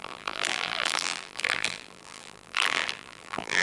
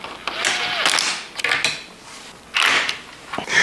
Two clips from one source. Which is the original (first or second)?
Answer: second